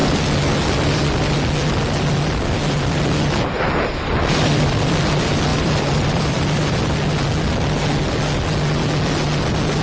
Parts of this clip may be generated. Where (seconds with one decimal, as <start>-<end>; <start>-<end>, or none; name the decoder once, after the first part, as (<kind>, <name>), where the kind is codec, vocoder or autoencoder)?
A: 5.5-6.8 (vocoder, BigVGAN v2)

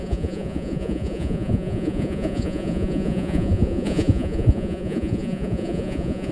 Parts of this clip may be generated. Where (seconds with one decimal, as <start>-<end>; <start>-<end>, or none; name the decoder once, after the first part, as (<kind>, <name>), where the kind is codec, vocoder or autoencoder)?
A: 0.0-6.3 (vocoder, Vocos)

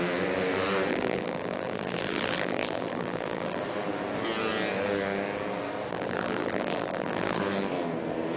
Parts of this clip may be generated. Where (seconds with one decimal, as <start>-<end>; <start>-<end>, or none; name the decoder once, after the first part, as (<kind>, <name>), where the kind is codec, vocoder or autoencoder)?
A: 0.9-3.6 (vocoder, BigVGAN v2); 5.9-7.4

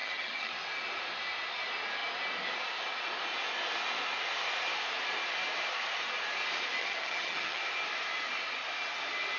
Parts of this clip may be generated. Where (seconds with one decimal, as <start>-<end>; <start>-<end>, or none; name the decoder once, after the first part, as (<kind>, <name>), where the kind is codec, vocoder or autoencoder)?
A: 0.0-0.5 (vocoder, HiFi-GAN); 6.8-7.6

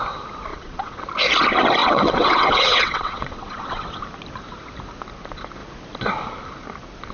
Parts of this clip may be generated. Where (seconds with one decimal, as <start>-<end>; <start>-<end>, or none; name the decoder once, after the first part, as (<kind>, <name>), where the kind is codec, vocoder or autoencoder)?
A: 0.5-1.0 (vocoder, WaveNeXt); 1.8-4.0

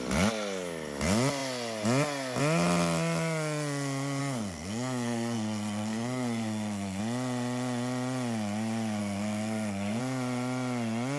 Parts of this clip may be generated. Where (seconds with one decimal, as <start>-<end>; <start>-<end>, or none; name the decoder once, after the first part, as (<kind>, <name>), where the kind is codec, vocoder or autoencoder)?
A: 4.2-7.0 (codec, SNAC); 9.0-10.0